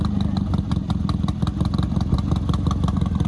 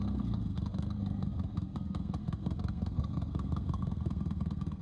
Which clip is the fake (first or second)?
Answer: second